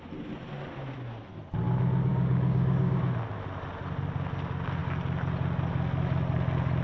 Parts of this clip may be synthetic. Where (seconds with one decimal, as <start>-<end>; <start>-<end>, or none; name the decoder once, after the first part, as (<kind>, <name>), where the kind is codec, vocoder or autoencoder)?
2.1-3.0 (codec, DAC)

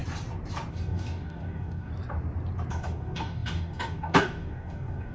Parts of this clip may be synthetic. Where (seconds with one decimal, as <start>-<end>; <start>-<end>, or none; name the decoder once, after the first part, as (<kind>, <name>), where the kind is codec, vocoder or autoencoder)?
0.7-1.9 (codec, DAC); 2.7-5.1

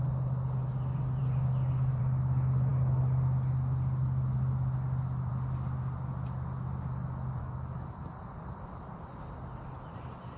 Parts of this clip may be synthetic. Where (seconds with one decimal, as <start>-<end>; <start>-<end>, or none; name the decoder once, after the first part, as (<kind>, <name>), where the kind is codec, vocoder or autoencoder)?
7.4-8.0 (codec, DAC)